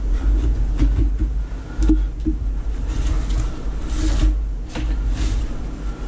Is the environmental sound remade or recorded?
recorded